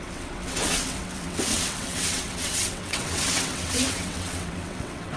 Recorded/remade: remade